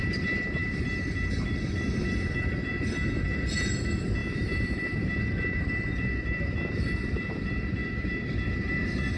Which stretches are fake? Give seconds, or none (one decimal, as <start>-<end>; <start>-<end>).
0.0-9.2